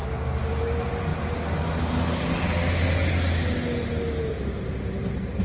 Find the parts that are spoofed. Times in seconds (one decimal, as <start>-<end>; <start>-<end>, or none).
none